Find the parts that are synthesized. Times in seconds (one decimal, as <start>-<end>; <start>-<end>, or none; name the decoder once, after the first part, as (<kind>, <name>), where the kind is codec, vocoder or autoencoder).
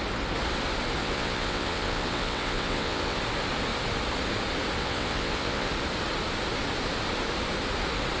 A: 1.0-3.2 (vocoder, WaveNeXt); 4.8-5.7